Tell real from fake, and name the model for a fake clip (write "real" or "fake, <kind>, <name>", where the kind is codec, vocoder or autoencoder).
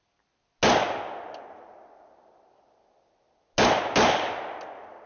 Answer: real